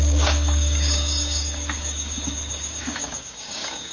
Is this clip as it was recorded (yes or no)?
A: no